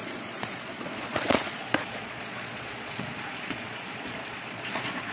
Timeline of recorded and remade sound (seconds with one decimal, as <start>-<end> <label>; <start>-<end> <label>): 0.0-5.1 remade